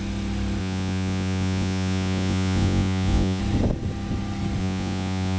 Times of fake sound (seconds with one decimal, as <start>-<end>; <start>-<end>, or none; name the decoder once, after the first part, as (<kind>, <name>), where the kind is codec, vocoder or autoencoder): 0.6-3.4 (vocoder, Vocos); 4.6-5.4